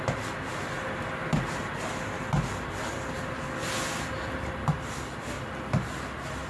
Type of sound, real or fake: real